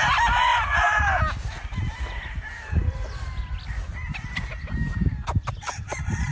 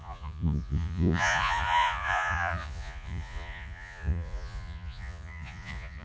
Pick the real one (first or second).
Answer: first